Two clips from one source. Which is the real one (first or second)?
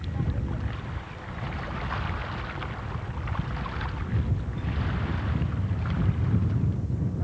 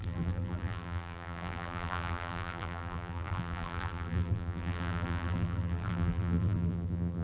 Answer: first